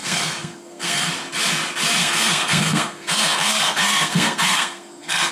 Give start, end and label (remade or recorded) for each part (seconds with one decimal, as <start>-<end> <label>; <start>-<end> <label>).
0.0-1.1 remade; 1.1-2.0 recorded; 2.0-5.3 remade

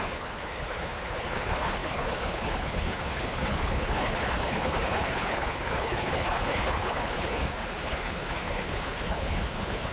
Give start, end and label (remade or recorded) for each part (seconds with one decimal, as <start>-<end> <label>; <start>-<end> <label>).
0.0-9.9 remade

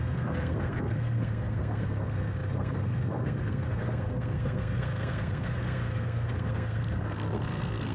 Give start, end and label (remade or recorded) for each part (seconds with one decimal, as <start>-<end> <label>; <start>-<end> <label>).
0.0-7.9 remade